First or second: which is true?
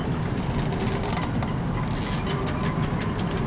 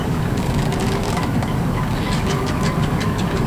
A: first